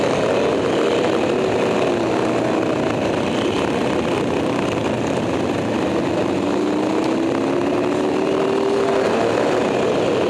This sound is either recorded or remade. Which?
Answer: recorded